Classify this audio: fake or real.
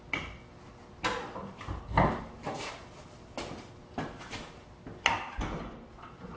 real